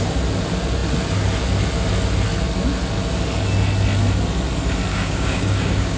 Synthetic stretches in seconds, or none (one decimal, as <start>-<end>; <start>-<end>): 4.9-6.0